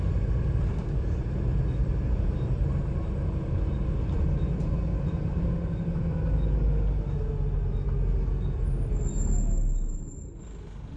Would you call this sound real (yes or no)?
yes